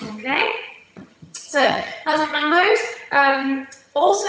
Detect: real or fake fake